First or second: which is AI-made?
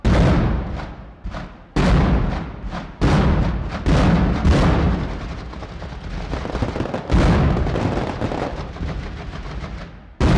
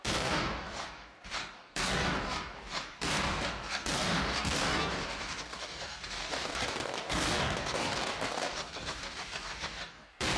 second